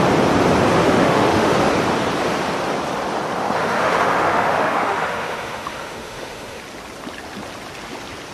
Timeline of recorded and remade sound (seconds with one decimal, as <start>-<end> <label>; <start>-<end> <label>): 0.0-0.8 recorded; 0.8-1.5 remade; 1.5-3.4 recorded; 3.4-6.6 remade; 6.6-8.3 recorded